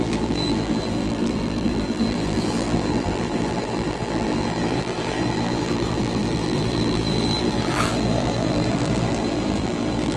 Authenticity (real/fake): fake